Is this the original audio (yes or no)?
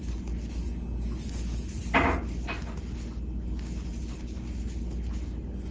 yes